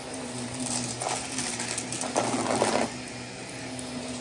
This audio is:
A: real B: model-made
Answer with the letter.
A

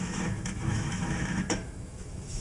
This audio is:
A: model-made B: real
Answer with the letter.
A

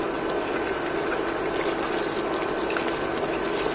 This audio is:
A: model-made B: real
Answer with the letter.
B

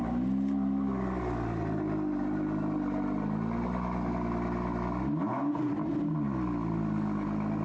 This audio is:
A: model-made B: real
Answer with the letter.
B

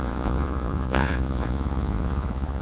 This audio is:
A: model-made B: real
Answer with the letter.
A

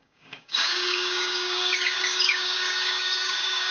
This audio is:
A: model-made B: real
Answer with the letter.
A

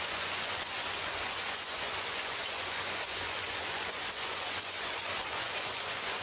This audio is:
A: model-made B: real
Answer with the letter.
A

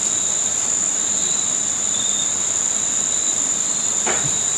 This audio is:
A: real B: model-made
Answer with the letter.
A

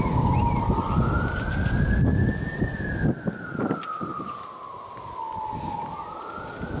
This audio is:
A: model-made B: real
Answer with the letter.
B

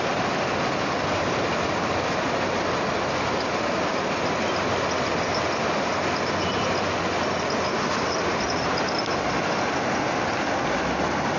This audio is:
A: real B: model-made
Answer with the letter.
A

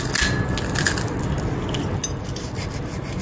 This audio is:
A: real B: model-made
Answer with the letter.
A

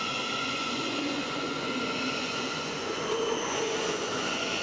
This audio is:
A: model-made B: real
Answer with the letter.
A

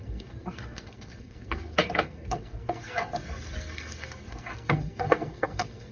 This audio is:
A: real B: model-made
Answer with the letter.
B